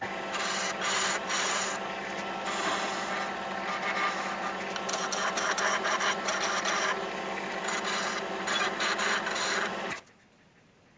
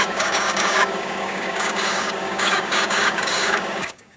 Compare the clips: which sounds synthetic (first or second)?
second